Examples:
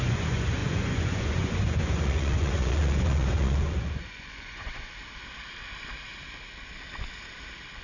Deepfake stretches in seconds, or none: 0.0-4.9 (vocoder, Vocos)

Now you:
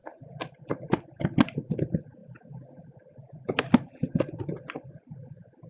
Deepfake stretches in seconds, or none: none

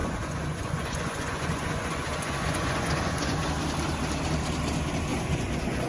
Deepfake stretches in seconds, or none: 0.0-3.5 (vocoder, Vocos); 5.1-5.9

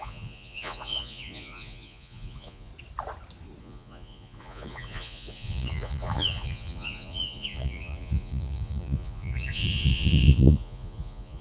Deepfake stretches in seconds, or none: 0.0-2.7 (vocoder, Vocos); 3.6-11.4